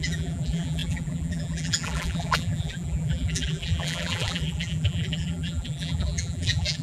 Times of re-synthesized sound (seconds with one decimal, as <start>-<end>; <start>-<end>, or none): 0.0-6.8